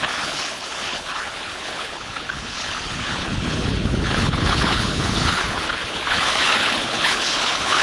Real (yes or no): no